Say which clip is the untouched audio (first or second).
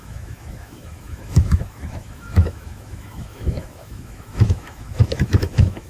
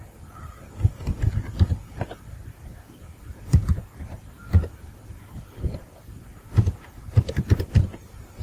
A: second